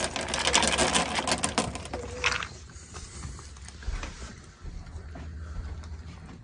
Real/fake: real